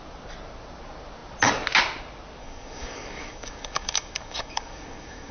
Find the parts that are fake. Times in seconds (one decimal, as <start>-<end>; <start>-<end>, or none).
2.4-5.3

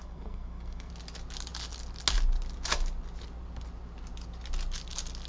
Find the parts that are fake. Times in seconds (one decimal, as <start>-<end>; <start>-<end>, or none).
0.0-0.9

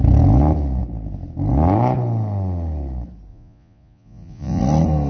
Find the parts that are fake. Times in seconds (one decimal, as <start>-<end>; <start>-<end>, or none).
3.3-4.6

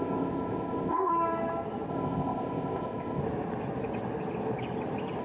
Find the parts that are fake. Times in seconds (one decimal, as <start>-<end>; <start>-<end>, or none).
0.0-1.1; 1.9-3.2

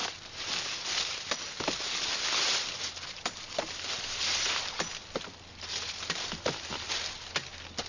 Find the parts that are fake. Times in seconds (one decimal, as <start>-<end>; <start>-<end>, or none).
none

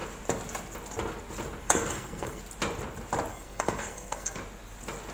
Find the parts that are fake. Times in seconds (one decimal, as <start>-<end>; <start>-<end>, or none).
1.6-2.4; 3.3-4.4

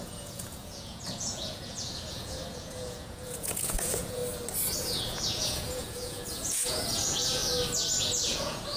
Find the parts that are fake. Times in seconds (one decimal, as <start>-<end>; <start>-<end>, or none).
0.0-4.2; 4.8-7.4; 8.0-8.8